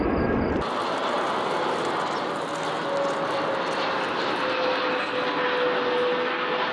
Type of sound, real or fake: real